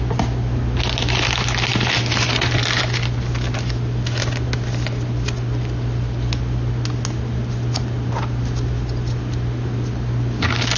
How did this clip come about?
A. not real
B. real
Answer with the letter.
B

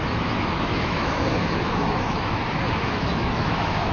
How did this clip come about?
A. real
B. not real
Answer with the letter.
B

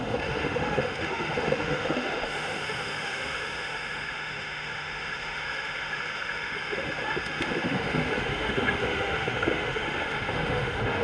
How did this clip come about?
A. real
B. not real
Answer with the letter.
B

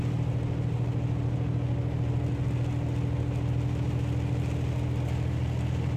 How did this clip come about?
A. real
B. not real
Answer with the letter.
A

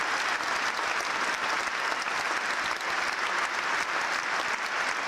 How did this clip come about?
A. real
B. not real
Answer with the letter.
A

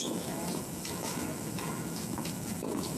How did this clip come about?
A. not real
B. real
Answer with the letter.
A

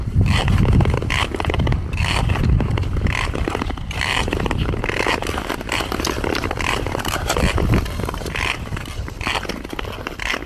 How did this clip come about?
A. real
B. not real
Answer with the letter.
A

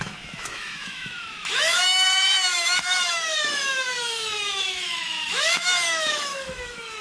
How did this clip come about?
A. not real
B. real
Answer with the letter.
A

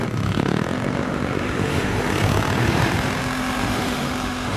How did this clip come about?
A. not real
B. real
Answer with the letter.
A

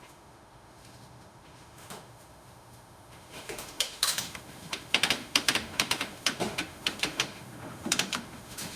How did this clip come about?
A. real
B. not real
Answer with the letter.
B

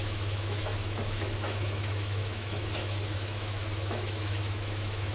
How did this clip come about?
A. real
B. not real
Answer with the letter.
B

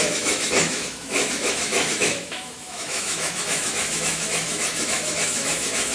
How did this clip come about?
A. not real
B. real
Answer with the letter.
A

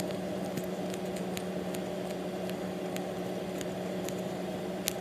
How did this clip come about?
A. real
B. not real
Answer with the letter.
A